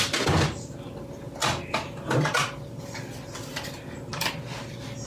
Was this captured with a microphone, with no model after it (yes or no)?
yes